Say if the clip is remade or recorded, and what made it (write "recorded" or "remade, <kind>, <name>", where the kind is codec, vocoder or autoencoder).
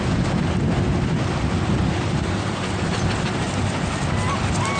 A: recorded